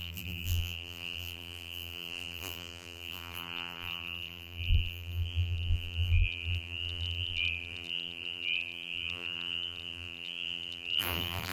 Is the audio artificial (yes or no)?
yes